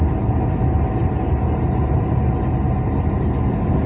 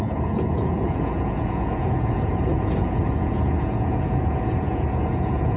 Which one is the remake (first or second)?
second